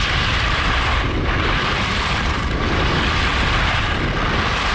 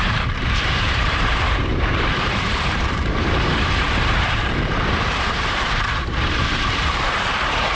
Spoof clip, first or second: second